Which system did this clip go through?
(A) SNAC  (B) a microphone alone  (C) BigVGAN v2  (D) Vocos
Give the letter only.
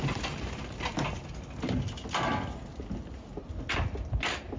B